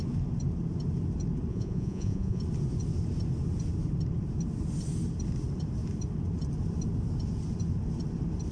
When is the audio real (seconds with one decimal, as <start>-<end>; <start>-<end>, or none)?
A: 0.0-1.5; 2.4-8.5